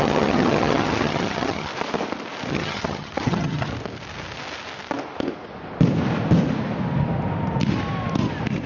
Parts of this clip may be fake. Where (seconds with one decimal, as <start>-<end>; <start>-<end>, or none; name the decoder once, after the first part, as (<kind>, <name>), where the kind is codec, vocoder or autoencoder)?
0.0-1.7 (vocoder, HiFi-GAN); 2.5-3.7

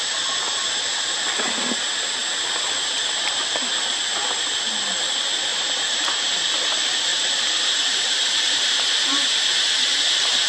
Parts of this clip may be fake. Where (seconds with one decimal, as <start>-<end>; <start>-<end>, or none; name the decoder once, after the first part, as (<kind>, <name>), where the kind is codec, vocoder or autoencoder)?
5.5-6.4 (vocoder, BigVGAN v2); 7.1-9.6

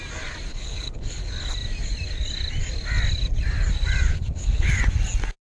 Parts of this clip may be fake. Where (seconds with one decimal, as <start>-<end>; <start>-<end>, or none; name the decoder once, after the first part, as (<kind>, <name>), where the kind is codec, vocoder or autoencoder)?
0.5-1.3 (codec, HILCodec); 4.1-4.8

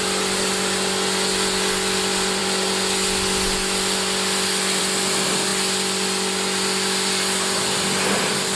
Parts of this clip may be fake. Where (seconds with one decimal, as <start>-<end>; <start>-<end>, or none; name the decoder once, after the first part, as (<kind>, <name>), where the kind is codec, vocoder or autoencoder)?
none